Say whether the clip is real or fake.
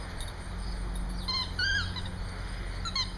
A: real